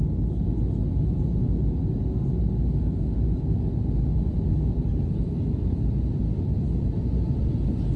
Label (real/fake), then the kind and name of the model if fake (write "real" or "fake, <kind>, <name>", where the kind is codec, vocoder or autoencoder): real